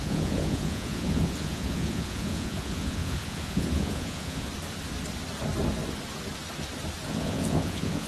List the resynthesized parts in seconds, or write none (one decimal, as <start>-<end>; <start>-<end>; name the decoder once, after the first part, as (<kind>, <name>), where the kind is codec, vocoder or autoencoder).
0.0-4.5 (vocoder, Vocos); 7.1-8.1

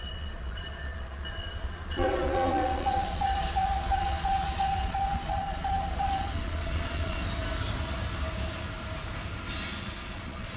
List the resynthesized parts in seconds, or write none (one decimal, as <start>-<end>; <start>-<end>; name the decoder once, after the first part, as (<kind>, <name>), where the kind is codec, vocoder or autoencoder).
0.0-7.2 (vocoder, Vocos); 9.8-10.6

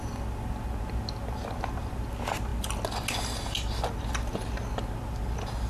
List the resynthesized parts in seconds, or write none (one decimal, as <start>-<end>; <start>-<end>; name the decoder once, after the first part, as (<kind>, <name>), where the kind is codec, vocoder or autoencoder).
none